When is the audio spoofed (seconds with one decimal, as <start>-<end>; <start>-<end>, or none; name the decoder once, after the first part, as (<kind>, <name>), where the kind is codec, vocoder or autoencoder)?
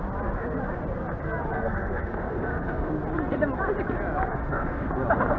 1.5-2.9 (codec, SNAC); 4.3-4.9